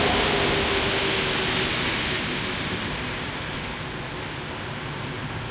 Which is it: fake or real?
real